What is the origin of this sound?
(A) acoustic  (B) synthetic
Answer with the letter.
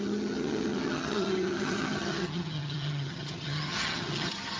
B